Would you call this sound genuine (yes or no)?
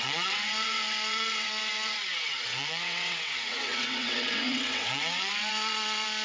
no